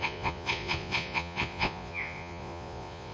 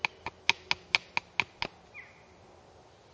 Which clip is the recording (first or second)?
second